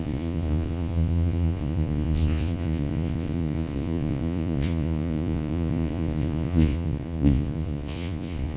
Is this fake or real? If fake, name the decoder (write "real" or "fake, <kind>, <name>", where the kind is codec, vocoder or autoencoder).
fake, vocoder, Vocos